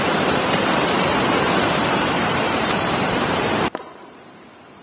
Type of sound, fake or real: fake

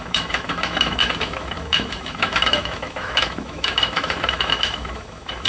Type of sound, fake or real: fake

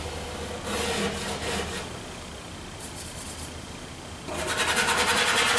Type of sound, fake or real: real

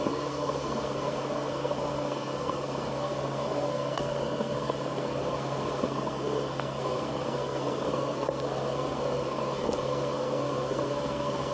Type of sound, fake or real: fake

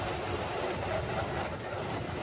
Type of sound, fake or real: real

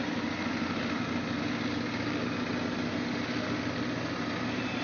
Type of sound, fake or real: real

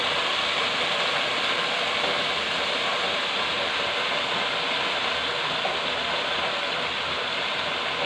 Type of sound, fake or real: real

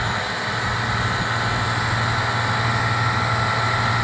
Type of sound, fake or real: real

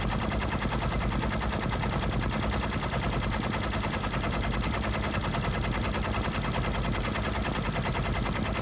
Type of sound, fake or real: real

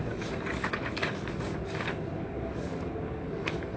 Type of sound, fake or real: fake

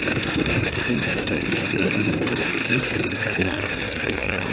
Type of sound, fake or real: fake